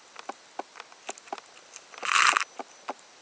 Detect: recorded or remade recorded